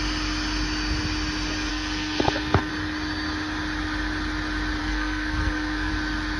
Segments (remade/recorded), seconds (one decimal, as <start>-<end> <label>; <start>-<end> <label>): 0.0-1.7 recorded; 1.7-2.7 remade; 2.7-4.8 recorded; 4.8-5.9 remade; 5.9-6.4 recorded